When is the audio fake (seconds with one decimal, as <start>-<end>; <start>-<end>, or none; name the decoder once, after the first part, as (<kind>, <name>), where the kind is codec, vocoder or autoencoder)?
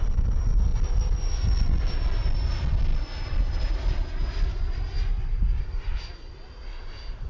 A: none